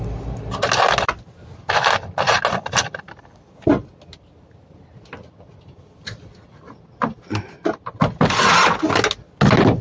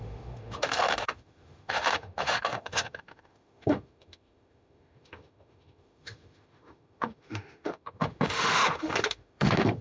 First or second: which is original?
first